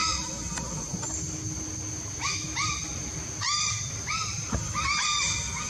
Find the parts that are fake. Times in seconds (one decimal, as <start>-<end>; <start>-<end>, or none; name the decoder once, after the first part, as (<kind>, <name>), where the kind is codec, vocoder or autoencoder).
none